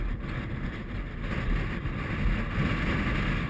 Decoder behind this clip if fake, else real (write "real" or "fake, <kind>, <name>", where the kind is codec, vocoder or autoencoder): real